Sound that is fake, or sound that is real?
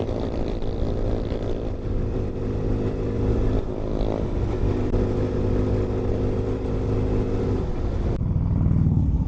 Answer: real